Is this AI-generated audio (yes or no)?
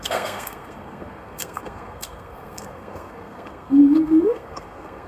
yes